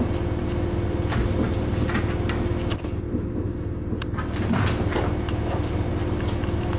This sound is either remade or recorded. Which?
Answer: recorded